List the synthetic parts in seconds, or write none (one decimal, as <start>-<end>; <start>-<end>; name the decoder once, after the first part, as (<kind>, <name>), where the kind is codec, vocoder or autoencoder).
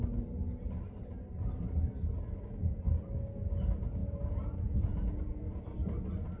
4.0-5.6 (vocoder, Vocos)